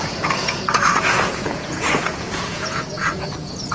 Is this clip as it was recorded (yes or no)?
no